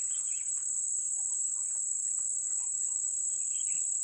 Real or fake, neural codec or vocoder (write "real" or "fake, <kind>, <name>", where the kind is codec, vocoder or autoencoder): real